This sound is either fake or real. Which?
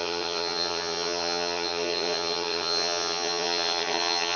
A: fake